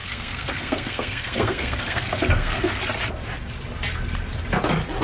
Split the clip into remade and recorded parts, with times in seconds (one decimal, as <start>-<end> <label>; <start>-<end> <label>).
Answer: 0.0-2.8 remade; 2.8-5.0 recorded